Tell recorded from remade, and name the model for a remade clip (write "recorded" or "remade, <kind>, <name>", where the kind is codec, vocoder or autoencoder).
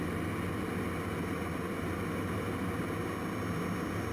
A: recorded